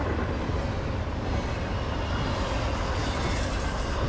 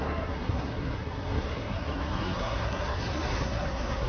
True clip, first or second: first